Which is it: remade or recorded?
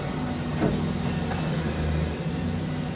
recorded